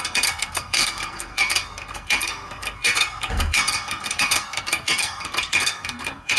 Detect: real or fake fake